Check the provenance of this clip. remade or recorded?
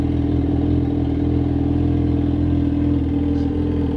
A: recorded